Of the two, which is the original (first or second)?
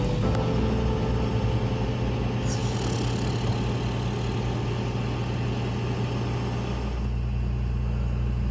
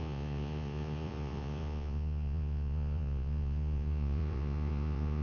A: first